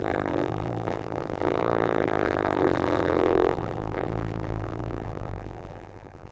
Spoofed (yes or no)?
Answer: yes